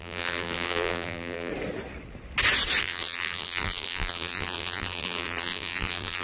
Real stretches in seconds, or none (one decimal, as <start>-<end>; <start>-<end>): 1.5-2.8